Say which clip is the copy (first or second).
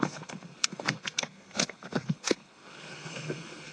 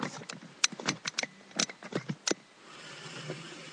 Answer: first